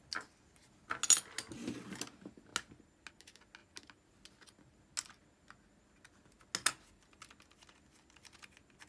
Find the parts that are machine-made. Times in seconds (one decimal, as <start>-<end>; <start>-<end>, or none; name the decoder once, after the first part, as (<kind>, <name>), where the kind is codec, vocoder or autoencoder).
none